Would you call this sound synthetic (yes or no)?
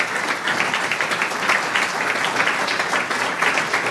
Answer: no